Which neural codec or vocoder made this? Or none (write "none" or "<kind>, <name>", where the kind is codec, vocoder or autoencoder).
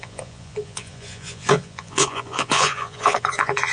vocoder, Vocos